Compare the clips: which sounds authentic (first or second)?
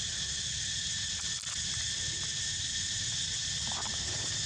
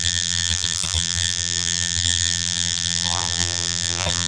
first